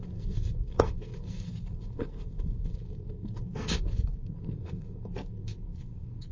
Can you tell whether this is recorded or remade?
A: remade